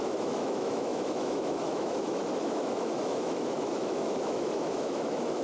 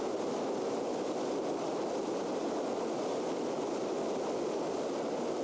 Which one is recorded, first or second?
second